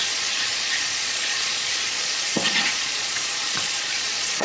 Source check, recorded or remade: remade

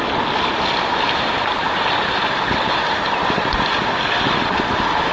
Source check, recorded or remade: recorded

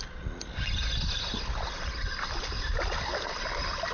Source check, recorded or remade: recorded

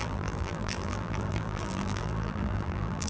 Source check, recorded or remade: remade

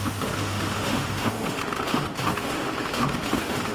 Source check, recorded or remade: remade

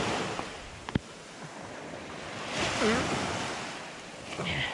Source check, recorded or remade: recorded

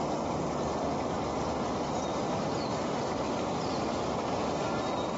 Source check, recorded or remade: recorded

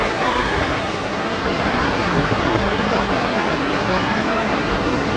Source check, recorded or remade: remade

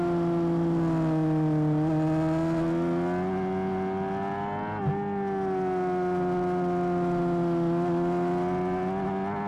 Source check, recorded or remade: recorded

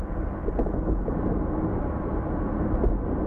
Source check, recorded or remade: recorded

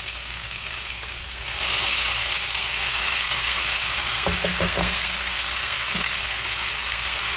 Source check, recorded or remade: remade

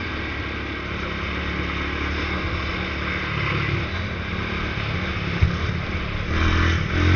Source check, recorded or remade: recorded